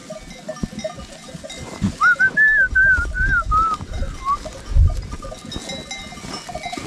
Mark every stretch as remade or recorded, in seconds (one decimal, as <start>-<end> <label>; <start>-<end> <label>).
0.0-6.9 recorded